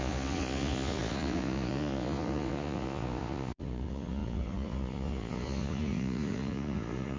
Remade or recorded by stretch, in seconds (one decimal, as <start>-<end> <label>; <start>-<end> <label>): 0.0-7.2 remade